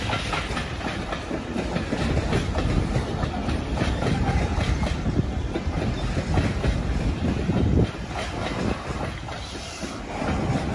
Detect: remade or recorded remade